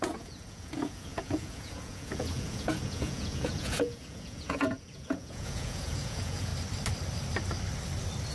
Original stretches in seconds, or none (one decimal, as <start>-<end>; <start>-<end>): 6.5-8.3